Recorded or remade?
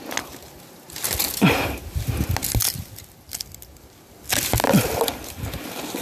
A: recorded